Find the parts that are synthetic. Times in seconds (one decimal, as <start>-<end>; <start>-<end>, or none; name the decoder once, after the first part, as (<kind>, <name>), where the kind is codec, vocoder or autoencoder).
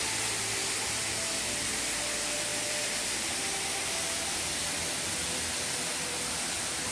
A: 2.5-6.9 (vocoder, BigVGAN v2)